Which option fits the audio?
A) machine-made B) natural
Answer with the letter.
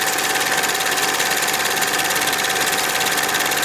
B